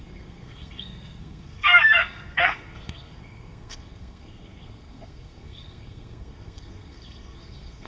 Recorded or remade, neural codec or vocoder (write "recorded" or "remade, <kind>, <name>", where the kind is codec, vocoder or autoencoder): remade, codec, SNAC